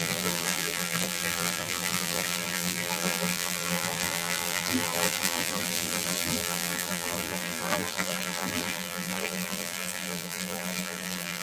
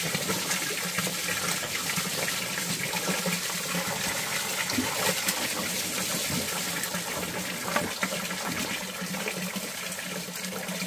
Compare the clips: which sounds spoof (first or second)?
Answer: first